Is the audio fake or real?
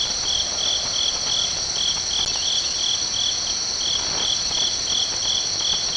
real